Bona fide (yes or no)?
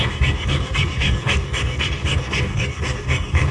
no